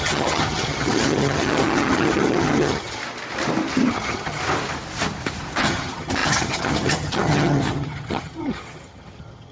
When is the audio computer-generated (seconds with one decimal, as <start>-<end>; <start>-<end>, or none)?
0.0-3.0; 3.9-4.4; 5.6-9.5

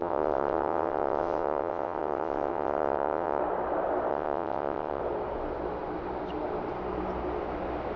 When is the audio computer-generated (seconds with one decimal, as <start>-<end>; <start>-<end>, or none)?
0.0-3.4; 4.1-5.0